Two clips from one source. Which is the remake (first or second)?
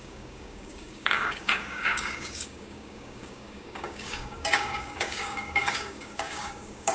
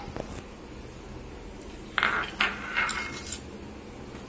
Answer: first